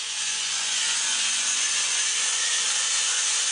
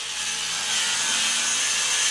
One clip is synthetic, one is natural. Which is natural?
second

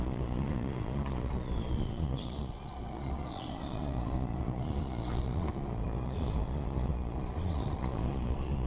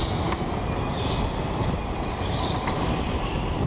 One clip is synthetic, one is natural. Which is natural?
second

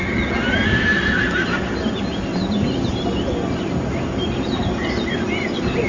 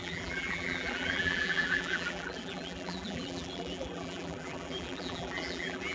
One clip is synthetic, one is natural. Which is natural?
first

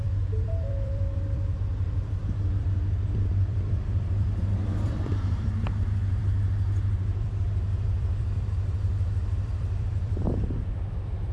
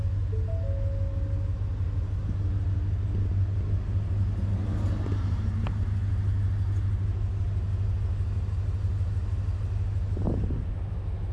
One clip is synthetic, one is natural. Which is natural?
second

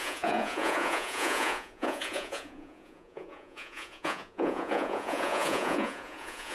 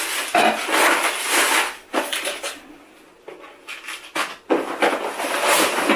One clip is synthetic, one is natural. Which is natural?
second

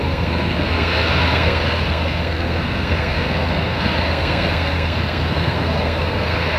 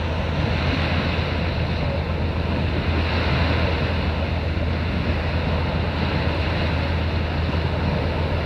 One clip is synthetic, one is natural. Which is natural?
second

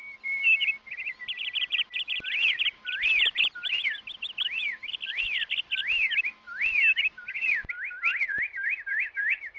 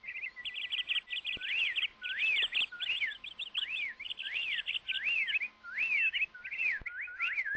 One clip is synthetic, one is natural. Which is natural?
second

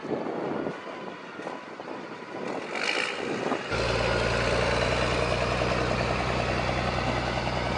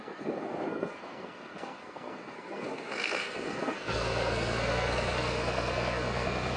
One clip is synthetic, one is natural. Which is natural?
first